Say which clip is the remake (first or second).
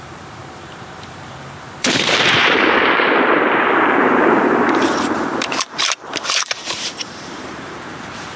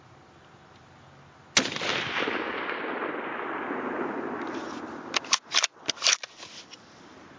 first